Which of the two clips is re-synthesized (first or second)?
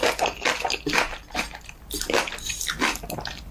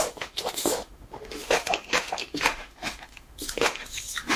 second